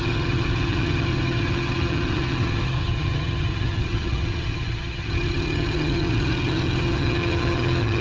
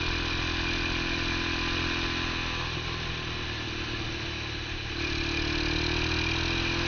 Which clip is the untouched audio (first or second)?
second